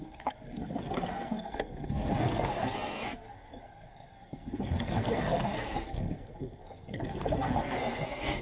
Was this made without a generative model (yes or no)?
no